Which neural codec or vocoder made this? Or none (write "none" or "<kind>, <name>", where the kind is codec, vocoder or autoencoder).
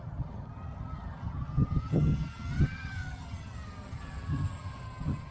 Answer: vocoder, HiFi-GAN